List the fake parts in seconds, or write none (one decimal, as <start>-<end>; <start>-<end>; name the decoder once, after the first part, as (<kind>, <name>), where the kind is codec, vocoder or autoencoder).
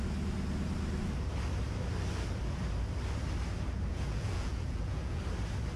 3.9-5.2 (vocoder, Vocos)